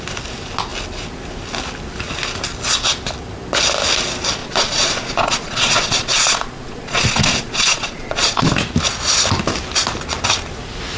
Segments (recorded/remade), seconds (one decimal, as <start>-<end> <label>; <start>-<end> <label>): 0.0-4.4 recorded; 4.4-8.5 remade; 8.5-11.0 recorded